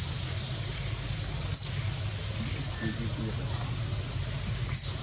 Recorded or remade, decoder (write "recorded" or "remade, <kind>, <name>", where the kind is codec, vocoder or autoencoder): recorded